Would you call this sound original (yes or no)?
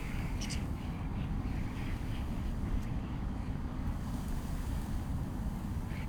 no